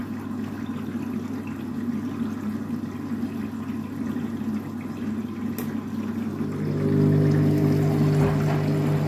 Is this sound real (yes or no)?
yes